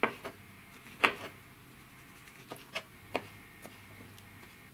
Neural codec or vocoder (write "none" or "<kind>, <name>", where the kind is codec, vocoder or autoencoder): none